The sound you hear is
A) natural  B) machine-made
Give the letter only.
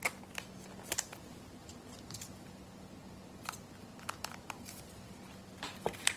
A